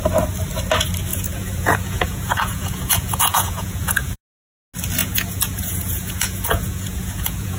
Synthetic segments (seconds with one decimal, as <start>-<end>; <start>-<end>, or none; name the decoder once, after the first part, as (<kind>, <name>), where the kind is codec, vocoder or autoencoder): 1.1-4.2 (vocoder, Vocos); 5.0-7.6